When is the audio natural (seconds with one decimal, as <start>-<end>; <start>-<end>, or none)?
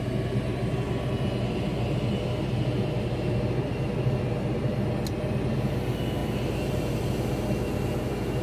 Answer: 0.0-8.4